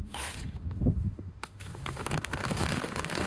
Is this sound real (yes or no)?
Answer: no